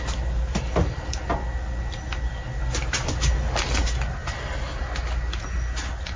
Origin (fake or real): real